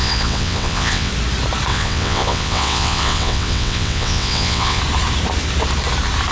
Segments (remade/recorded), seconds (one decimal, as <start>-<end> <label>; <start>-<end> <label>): 0.0-1.1 remade; 1.1-1.7 recorded; 1.7-4.8 remade; 4.8-6.3 recorded